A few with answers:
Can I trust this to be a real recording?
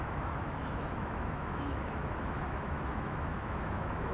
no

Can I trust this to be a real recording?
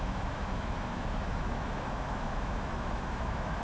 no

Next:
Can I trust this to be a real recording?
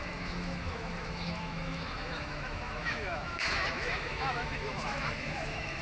no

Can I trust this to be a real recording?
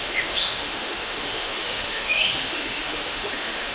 no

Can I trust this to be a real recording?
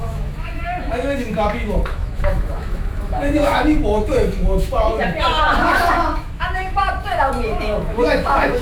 no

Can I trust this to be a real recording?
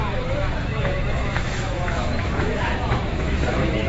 no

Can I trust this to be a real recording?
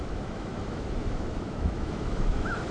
no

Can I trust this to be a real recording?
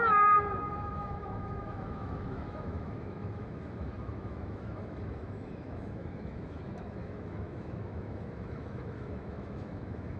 no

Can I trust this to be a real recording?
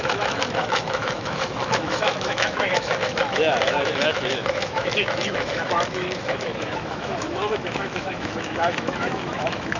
no